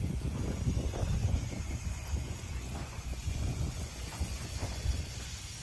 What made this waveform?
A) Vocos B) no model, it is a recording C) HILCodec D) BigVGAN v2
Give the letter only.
A